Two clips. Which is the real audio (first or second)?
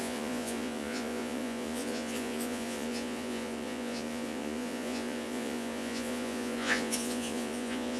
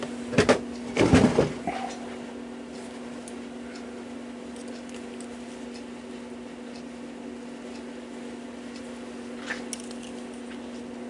second